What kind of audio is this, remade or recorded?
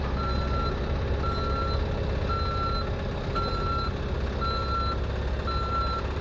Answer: recorded